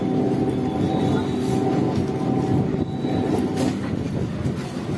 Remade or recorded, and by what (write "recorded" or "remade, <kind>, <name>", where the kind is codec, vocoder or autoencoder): recorded